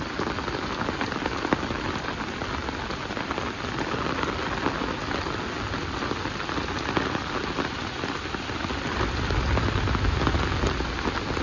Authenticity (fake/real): real